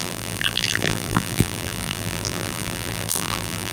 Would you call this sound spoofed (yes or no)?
yes